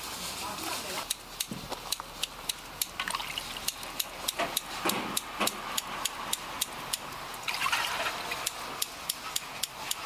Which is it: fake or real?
real